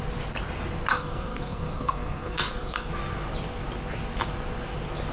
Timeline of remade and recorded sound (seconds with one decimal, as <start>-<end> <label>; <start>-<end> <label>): 0.0-0.9 recorded; 0.9-2.9 remade; 2.9-5.1 recorded